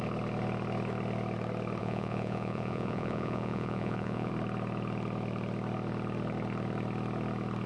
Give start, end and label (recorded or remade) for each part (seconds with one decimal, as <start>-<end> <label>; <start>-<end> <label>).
0.0-1.8 recorded; 1.8-4.3 remade; 4.3-7.7 recorded

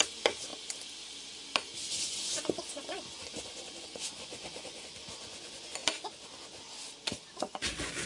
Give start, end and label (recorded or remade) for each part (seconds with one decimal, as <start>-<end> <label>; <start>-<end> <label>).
0.0-0.5 remade; 0.5-1.9 recorded; 1.9-5.8 remade; 5.8-7.4 recorded; 7.4-8.1 remade